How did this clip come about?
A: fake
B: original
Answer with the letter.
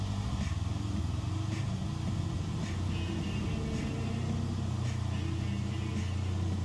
B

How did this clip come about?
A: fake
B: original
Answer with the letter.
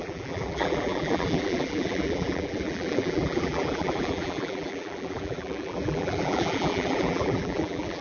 A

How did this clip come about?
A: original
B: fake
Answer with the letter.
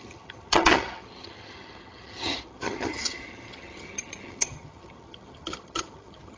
B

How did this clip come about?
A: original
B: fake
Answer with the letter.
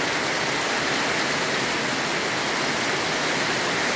A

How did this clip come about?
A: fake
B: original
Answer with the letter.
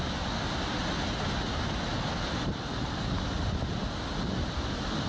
B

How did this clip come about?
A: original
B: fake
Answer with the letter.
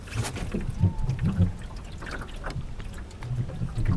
A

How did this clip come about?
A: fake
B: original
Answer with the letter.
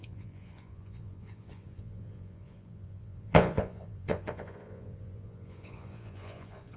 A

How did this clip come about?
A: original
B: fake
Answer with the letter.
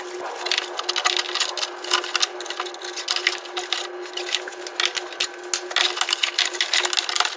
A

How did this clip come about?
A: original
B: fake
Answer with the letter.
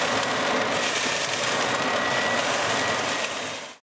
A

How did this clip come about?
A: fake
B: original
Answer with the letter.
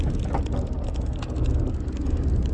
B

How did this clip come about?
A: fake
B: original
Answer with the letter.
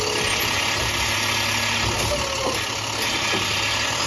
B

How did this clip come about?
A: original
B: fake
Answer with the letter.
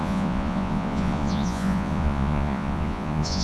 B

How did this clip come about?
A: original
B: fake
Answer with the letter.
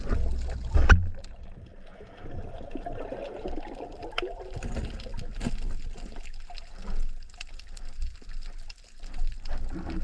A